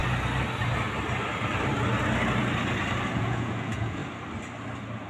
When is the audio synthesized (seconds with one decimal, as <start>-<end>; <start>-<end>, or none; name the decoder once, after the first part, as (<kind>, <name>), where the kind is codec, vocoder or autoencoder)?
3.1-4.0 (vocoder, Vocos)